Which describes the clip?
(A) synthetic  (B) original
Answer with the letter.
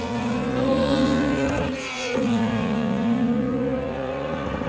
A